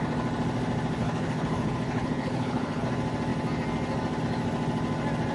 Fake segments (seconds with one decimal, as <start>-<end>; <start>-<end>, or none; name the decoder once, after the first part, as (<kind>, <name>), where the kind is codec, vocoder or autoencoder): 1.0-2.9 (codec, HILCodec)